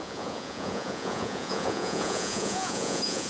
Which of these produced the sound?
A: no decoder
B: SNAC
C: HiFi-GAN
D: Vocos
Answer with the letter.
D